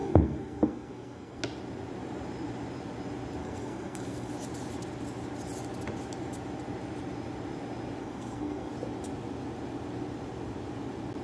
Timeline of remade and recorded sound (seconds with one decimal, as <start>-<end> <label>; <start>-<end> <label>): 0.0-1.4 remade; 1.4-3.4 recorded; 3.4-4.3 remade; 4.3-8.0 recorded; 8.0-8.7 remade; 8.7-11.2 recorded